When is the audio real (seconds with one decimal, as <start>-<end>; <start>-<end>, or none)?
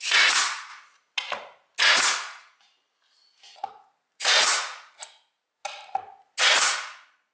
0.7-1.8; 5.6-6.4